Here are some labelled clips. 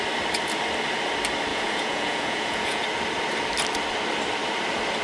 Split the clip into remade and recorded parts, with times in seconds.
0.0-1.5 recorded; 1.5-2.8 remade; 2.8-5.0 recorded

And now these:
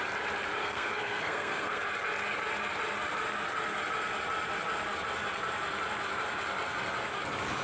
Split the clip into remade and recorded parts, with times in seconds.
0.0-0.6 recorded; 0.6-1.8 remade; 1.8-7.6 recorded

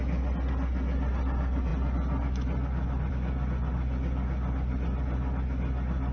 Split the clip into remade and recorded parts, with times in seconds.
0.0-6.1 recorded

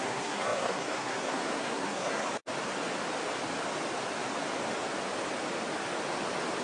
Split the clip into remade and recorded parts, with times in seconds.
0.0-2.3 remade; 2.3-6.6 recorded

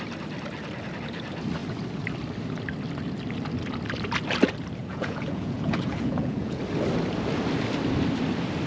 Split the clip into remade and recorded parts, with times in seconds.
0.0-4.8 recorded; 4.8-6.6 remade; 6.6-8.7 recorded